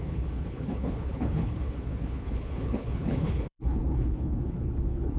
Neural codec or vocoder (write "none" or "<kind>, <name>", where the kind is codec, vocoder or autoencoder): codec, HILCodec